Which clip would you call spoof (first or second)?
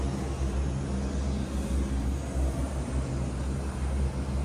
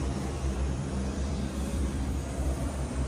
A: second